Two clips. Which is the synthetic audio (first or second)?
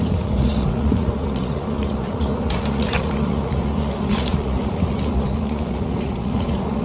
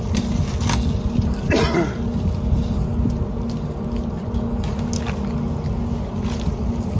first